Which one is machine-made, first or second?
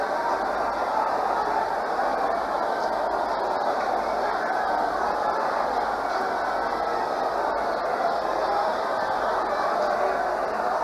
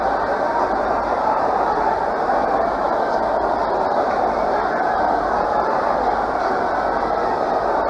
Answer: second